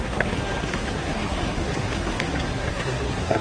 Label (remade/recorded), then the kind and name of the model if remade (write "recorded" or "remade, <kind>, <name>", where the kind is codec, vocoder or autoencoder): remade, codec, SNAC